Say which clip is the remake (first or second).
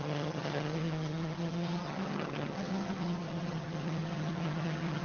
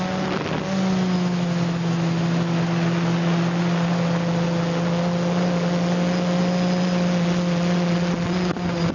first